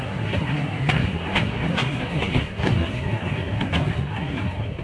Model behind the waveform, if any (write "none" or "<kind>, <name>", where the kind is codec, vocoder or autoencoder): codec, SNAC